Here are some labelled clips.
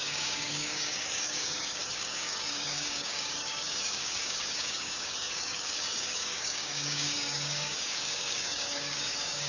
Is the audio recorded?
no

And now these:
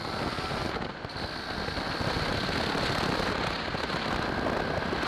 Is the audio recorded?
yes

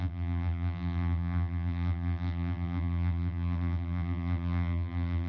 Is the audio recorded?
no